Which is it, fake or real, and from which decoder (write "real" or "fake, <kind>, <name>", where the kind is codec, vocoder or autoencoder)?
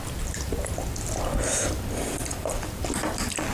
real